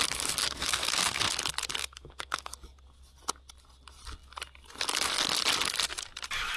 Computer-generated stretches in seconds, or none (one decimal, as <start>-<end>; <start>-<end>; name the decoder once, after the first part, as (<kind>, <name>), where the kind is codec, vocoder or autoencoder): 0.4-1.3 (codec, SNAC); 1.8-2.5